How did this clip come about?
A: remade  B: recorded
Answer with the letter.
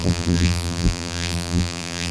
A